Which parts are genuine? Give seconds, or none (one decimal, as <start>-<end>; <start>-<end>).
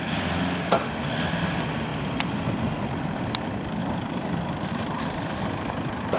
1.9-3.0